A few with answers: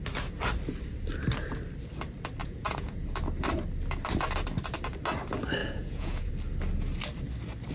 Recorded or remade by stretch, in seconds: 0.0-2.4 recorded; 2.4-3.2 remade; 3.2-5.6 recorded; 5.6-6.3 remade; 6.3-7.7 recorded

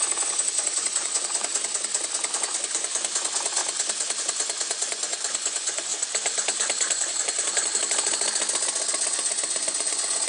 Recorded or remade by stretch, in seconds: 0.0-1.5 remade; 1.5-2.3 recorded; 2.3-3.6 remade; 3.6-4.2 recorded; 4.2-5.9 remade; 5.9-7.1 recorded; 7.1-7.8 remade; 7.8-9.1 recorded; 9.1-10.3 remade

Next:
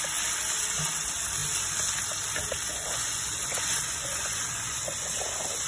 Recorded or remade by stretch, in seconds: 0.0-2.7 recorded; 2.7-5.2 remade; 5.2-5.7 recorded

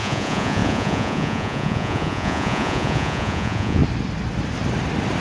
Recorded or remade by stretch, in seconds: 0.0-3.8 remade; 3.8-5.2 recorded

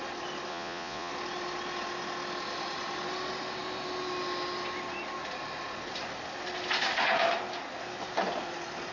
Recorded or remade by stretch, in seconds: 0.0-0.5 recorded; 0.5-1.1 remade; 1.1-8.9 recorded